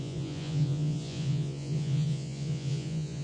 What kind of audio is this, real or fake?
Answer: fake